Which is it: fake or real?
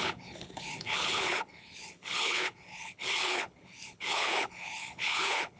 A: fake